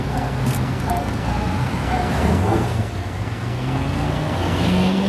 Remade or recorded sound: remade